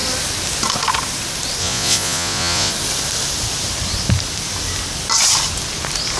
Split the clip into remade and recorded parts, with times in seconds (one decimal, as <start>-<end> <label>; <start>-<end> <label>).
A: 0.0-1.6 recorded; 1.6-2.7 remade; 2.7-6.2 recorded